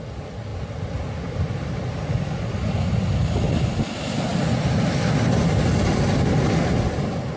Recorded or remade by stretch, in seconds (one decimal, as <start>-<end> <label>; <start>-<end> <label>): 0.0-7.4 recorded